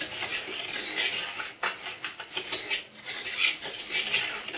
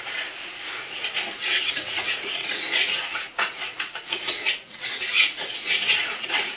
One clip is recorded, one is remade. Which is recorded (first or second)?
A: first